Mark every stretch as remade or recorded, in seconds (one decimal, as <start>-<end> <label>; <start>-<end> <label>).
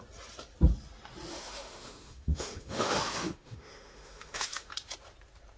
0.0-1.3 recorded; 1.3-4.7 remade; 4.7-5.6 recorded